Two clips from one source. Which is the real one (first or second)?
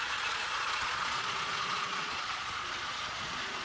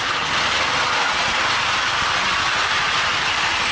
second